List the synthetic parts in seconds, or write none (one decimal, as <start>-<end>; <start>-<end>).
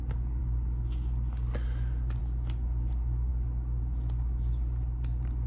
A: none